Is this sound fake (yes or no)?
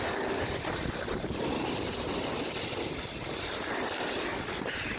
no